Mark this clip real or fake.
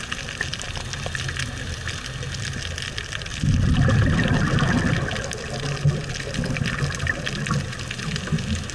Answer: real